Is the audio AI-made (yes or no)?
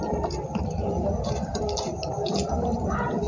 yes